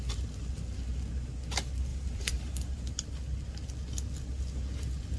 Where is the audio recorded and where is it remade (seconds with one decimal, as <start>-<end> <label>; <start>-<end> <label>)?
0.0-1.9 recorded; 1.9-2.8 remade; 2.8-5.2 recorded